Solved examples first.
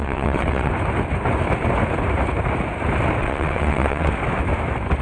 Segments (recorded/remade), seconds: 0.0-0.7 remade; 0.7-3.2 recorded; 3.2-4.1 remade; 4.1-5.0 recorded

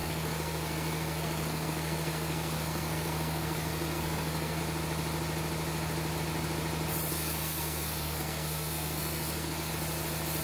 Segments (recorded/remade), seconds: 0.0-4.6 remade; 4.6-7.1 recorded; 7.1-9.7 remade; 9.7-10.4 recorded

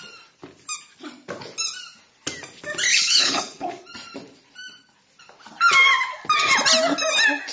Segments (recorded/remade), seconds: 0.0-2.9 recorded; 2.9-3.7 remade; 3.7-7.5 recorded

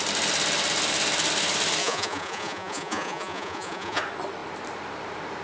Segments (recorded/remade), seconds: 0.0-1.8 recorded; 1.8-4.0 remade; 4.0-5.4 recorded

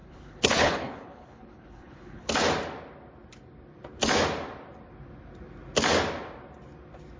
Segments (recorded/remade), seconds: 0.0-2.3 remade; 2.3-7.2 recorded

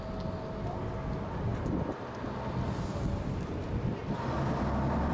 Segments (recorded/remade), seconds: 0.0-5.1 recorded